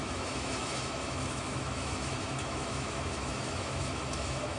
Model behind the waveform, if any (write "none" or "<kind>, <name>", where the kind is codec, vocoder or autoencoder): autoencoder, DAC-VAE